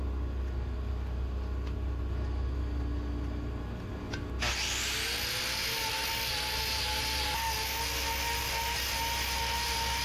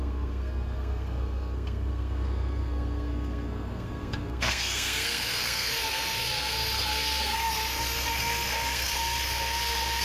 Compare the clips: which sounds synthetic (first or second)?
second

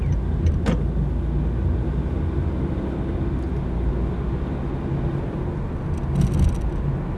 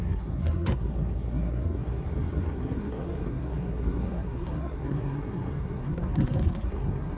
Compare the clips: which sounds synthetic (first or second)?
second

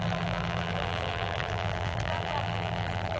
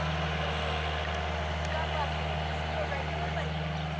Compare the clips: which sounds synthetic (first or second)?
first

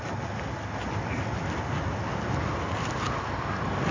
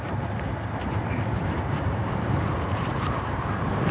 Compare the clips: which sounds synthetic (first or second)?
second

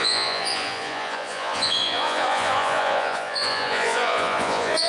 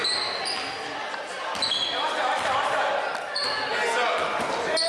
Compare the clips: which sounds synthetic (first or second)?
first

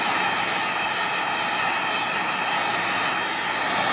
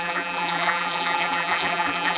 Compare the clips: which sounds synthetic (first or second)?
second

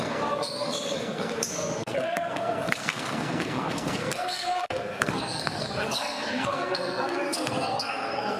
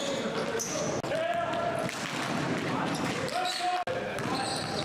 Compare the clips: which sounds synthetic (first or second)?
first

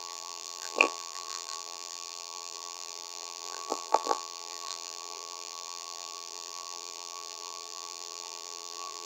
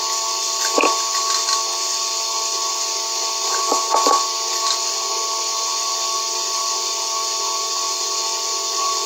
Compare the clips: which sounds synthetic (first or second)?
first